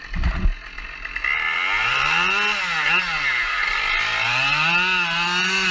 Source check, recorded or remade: recorded